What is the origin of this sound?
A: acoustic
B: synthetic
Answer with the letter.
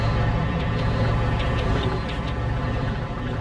A